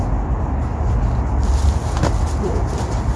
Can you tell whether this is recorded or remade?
recorded